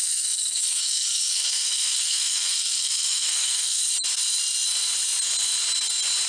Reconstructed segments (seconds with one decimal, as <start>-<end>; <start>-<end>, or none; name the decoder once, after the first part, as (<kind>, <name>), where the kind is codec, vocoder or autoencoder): 0.0-3.8 (codec, SNAC)

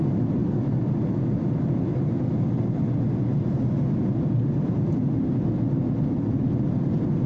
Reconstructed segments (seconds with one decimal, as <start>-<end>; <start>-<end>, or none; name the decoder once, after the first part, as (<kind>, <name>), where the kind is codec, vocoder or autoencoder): none